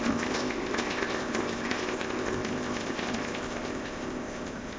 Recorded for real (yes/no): no